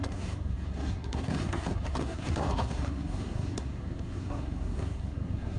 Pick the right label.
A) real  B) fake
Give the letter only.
B